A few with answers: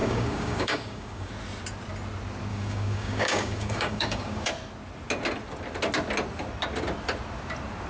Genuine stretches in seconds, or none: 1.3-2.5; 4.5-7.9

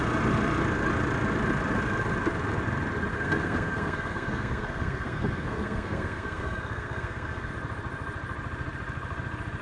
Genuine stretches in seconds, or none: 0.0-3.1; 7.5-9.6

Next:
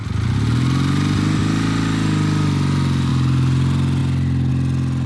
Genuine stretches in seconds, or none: 0.0-5.1

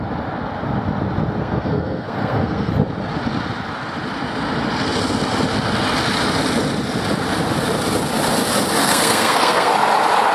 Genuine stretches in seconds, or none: 0.0-1.4; 2.7-8.8; 9.7-10.3

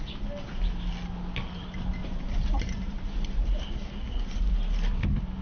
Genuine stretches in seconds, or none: 0.0-2.0; 3.5-5.4